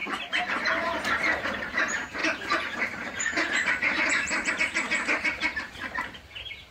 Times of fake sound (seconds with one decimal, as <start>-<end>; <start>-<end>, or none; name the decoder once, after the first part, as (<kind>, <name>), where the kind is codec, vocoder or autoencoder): 0.0-0.9 (vocoder, BigVGAN v2); 1.8-6.7